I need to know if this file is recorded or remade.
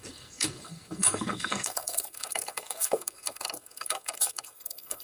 remade